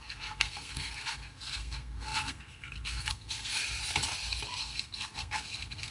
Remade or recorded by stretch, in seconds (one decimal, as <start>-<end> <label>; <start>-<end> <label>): 0.0-3.6 remade; 3.6-4.6 recorded; 4.6-5.9 remade